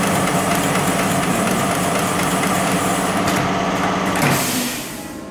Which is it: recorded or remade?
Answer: recorded